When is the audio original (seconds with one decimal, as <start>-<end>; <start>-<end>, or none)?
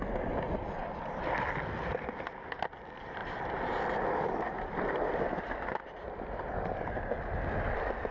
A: 0.0-0.8; 1.3-8.1